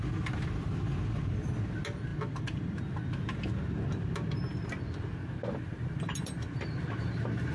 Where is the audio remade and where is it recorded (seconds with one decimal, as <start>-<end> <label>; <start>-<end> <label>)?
0.0-7.5 recorded